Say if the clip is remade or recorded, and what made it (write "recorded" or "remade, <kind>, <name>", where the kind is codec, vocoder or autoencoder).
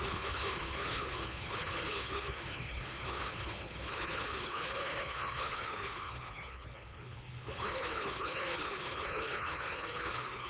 remade, codec, HILCodec